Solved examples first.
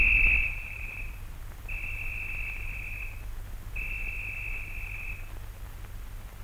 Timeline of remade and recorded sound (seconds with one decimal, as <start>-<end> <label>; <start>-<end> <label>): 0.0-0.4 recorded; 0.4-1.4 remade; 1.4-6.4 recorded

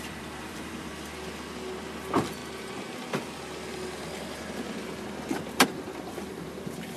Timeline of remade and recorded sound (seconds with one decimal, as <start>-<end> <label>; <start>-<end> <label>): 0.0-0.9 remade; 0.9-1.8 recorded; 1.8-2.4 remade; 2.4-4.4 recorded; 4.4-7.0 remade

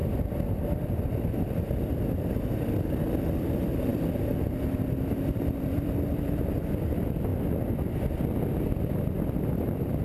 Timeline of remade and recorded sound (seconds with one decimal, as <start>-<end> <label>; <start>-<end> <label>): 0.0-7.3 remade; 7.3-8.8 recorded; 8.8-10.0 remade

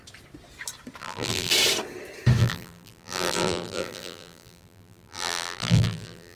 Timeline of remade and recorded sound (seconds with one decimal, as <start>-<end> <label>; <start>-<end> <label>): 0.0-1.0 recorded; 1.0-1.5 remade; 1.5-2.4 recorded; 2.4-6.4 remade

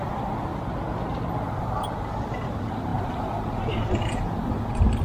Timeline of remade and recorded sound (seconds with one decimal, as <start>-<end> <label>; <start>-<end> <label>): 0.0-0.5 remade; 0.5-1.8 recorded; 1.8-5.0 remade

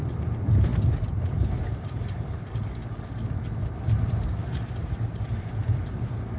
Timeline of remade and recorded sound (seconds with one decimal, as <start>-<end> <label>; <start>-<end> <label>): 0.0-2.8 remade; 2.8-3.5 recorded; 3.5-6.4 remade